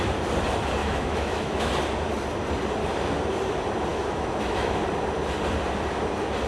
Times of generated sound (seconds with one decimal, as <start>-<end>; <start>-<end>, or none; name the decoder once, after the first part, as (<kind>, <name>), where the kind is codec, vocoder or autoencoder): 0.8-1.7 (autoencoder, DAC-VAE); 3.9-4.8